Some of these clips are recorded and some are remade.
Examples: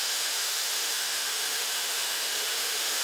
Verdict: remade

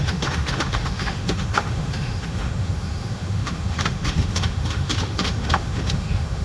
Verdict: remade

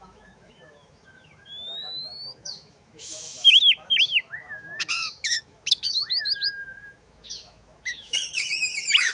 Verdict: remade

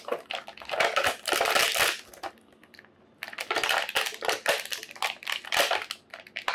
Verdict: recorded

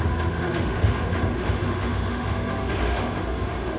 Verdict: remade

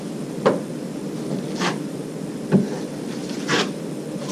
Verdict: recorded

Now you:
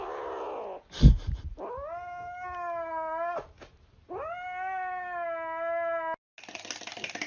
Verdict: recorded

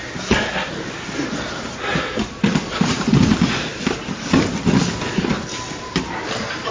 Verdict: recorded